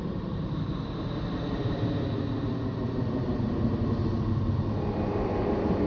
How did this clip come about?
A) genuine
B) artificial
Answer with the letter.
A